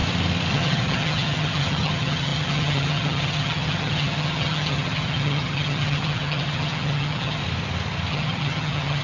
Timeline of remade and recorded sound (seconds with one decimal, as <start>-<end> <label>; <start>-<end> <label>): 0.0-0.5 recorded; 0.5-7.4 remade; 7.4-8.1 recorded; 8.1-9.0 remade

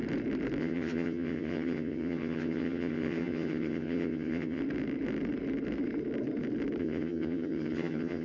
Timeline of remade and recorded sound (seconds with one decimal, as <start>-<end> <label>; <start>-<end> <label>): 0.0-0.6 recorded; 0.6-4.6 remade; 4.6-6.8 recorded; 6.8-8.2 remade

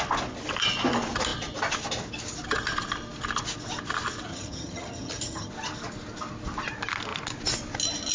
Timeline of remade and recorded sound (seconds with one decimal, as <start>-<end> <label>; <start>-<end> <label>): 0.0-4.3 recorded; 4.3-5.5 remade; 5.5-8.1 recorded